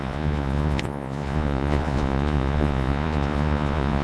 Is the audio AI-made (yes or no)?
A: yes